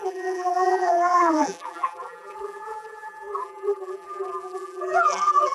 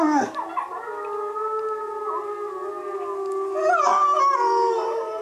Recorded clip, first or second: second